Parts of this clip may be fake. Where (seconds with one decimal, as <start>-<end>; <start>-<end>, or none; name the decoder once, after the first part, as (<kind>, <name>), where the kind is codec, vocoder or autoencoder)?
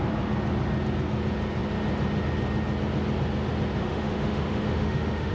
3.8-5.3 (autoencoder, DAC-VAE)